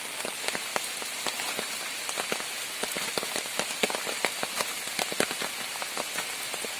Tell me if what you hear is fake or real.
real